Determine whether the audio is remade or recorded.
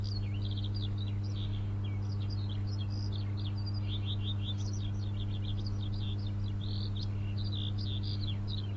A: recorded